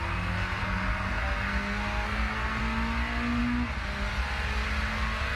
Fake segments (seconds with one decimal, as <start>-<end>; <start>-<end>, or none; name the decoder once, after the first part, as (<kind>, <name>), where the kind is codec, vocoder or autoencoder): 0.6-2.6 (codec, SNAC); 4.9-5.4